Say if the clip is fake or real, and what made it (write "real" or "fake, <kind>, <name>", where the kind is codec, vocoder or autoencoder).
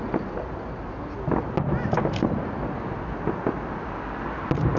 real